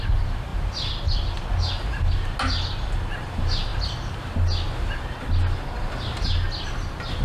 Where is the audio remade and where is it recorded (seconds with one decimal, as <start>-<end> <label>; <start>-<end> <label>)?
0.0-7.2 recorded